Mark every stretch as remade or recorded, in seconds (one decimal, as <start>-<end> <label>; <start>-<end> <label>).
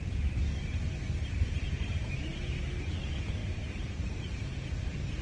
0.0-1.2 recorded; 1.2-2.1 remade; 2.1-3.4 recorded; 3.4-4.5 remade; 4.5-5.2 recorded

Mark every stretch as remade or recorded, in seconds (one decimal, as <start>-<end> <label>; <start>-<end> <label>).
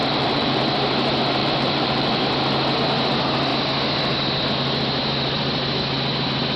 0.0-0.6 remade; 0.6-1.4 recorded; 1.4-2.2 remade; 2.2-6.6 recorded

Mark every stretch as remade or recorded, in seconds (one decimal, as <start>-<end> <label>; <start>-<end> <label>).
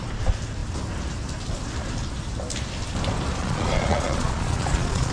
0.0-3.4 recorded; 3.4-5.1 remade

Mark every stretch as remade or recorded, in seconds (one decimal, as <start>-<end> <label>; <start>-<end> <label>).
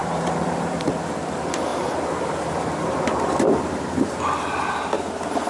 0.0-0.9 remade; 0.9-1.7 recorded; 1.7-4.4 remade; 4.4-5.5 recorded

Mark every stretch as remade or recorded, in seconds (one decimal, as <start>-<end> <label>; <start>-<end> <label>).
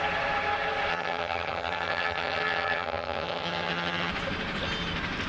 0.0-0.9 recorded; 0.9-4.1 remade; 4.1-5.3 recorded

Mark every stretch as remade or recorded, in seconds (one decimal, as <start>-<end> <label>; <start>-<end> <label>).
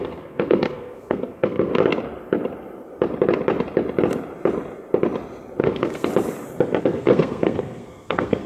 0.0-1.7 remade; 1.7-5.6 recorded; 5.6-6.1 remade; 6.1-6.8 recorded; 6.8-8.5 remade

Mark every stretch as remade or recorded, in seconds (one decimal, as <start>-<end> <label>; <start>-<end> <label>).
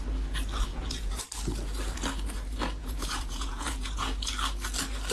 0.0-0.7 recorded; 0.7-1.2 remade; 1.2-2.8 recorded; 2.8-4.2 remade; 4.2-5.1 recorded